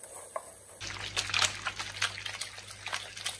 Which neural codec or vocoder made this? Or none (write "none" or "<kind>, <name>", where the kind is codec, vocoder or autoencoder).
none